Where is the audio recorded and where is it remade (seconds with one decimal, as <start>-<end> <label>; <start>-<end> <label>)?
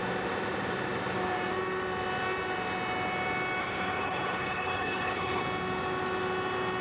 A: 0.0-3.6 recorded; 3.6-5.4 remade; 5.4-6.8 recorded